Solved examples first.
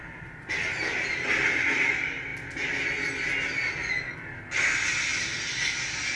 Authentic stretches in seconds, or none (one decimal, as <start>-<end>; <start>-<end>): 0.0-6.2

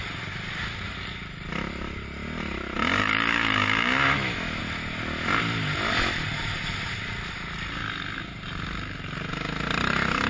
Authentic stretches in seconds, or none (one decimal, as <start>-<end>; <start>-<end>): 0.0-3.0; 4.6-10.3

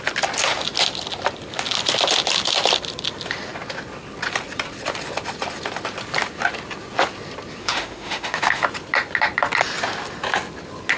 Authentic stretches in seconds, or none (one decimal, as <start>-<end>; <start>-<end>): 0.0-7.6; 8.6-11.0

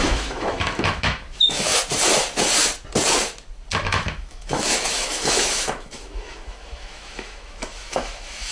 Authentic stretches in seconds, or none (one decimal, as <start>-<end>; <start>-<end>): 1.7-3.8